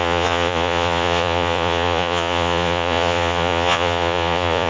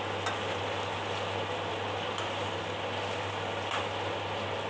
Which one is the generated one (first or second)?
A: first